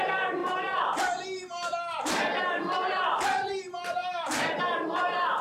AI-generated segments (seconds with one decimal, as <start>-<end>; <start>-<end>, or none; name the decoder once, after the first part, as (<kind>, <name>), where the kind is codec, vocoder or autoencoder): 0.4-3.6 (vocoder, BigVGAN v2); 4.0-4.6